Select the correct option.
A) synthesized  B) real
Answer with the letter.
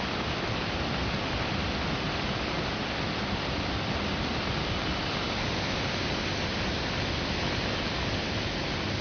B